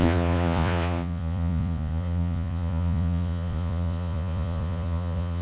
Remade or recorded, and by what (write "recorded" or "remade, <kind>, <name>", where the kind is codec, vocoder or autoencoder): remade, vocoder, Vocos